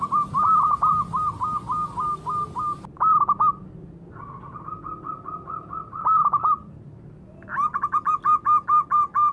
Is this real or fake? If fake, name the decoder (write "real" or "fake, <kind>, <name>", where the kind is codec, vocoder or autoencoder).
real